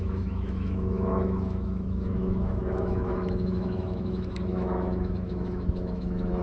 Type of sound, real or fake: fake